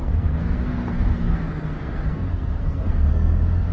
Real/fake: fake